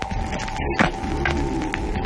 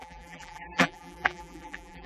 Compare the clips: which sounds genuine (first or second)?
first